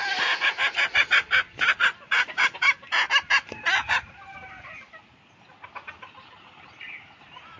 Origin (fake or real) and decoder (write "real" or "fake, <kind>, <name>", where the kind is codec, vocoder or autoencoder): real